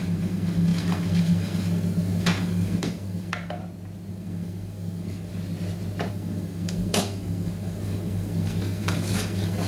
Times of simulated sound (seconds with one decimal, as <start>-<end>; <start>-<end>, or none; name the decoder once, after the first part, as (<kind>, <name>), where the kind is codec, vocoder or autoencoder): 0.0-3.6 (codec, SNAC); 4.1-5.3; 6.1-9.7